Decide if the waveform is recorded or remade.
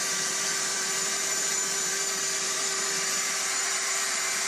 remade